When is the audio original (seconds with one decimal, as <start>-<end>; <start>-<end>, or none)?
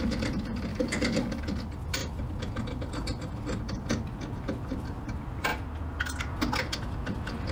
0.0-0.7; 1.4-7.5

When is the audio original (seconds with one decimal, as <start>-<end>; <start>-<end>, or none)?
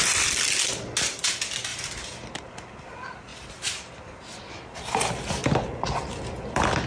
0.0-1.7; 2.5-3.3; 3.8-6.9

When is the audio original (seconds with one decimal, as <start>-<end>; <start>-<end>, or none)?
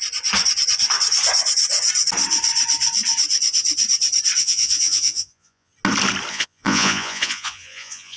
0.0-4.4; 5.7-6.3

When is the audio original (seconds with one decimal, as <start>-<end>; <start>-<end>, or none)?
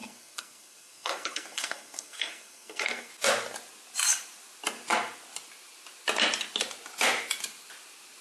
3.1-8.2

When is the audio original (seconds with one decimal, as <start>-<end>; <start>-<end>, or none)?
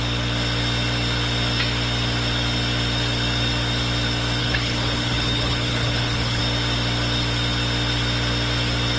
0.0-4.4; 6.4-9.0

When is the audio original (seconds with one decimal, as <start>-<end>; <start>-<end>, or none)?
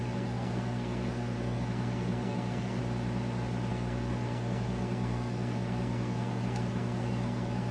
2.8-3.7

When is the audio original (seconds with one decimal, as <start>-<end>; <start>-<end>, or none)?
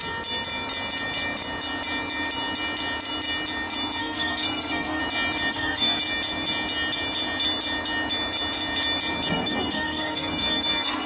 0.0-4.0; 5.0-5.5; 6.0-9.3